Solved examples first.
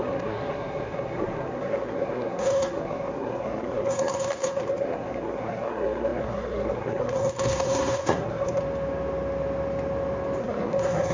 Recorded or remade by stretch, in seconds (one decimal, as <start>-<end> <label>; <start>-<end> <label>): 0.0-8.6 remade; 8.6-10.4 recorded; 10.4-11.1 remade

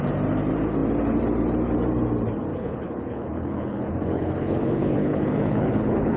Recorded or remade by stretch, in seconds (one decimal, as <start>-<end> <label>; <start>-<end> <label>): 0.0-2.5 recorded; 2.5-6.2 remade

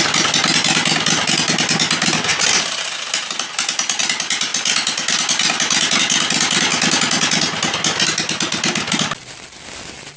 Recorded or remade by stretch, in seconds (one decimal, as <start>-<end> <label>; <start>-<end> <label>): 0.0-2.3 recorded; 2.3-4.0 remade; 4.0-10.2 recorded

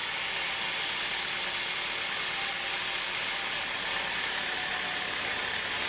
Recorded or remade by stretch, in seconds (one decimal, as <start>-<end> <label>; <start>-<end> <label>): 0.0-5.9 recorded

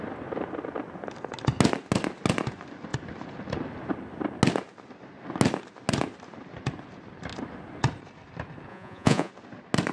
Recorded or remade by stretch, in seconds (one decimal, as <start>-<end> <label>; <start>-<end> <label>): 0.0-8.7 recorded; 8.7-9.3 remade; 9.3-9.9 recorded